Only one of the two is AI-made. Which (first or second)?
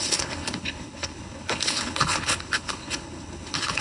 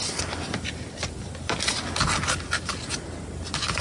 first